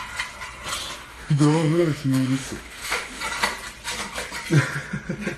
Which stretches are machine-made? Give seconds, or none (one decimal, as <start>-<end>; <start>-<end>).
1.1-3.2